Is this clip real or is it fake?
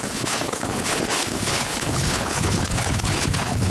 fake